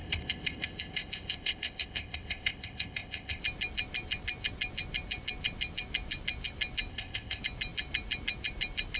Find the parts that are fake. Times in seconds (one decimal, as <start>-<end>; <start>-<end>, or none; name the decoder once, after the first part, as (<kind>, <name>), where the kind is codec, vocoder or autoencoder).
0.0-3.4 (codec, ZipCodec); 6.9-7.4